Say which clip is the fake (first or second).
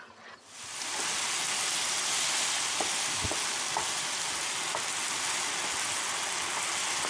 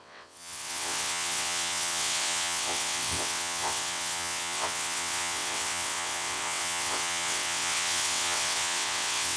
second